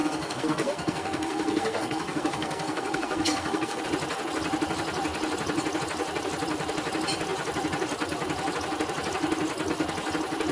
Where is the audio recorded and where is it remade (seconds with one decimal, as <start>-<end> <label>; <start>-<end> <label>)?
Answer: 0.0-3.8 remade; 3.8-10.5 recorded